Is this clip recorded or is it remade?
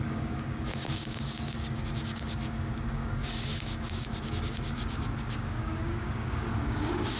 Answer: remade